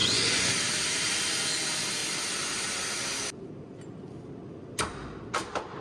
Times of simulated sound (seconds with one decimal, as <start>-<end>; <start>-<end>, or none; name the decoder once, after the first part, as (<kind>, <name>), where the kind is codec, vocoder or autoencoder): 0.0-0.5 (vocoder, Vocos)